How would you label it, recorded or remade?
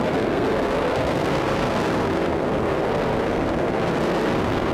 remade